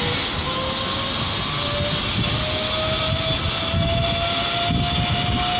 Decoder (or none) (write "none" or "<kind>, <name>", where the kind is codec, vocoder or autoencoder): none